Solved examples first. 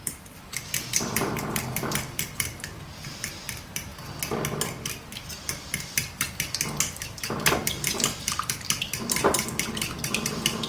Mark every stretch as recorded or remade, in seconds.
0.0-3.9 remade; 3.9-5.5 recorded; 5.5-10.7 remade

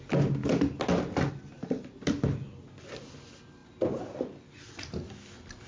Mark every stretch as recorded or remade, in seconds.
0.0-5.7 recorded

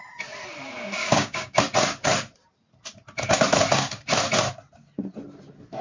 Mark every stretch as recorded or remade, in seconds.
0.0-1.0 recorded; 1.0-1.6 remade; 1.6-5.8 recorded

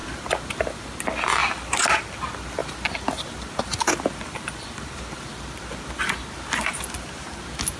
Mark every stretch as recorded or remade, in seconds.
0.0-7.8 recorded

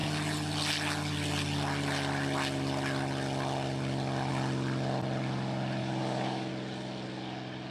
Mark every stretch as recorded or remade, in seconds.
0.0-5.8 recorded; 5.8-6.5 remade; 6.5-7.7 recorded